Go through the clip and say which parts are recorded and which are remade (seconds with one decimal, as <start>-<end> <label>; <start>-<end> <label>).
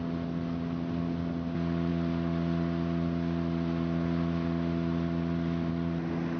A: 0.0-6.4 recorded